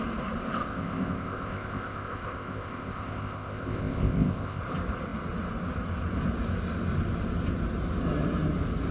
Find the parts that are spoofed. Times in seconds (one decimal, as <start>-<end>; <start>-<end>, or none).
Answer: 0.6-4.6